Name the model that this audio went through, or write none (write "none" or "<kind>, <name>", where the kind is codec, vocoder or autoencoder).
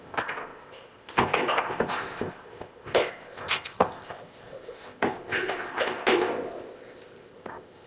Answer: codec, ZipCodec